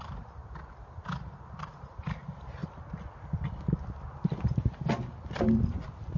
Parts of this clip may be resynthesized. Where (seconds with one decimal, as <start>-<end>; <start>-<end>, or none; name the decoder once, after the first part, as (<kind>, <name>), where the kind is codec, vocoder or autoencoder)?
0.0-0.4 (vocoder, BigVGAN v2); 1.2-2.6; 4.1-6.2